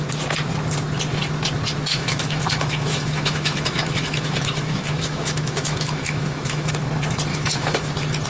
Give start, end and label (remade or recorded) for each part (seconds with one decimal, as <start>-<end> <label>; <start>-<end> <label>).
0.0-1.9 recorded; 1.9-6.7 remade; 6.7-7.3 recorded; 7.3-7.9 remade; 7.9-8.3 recorded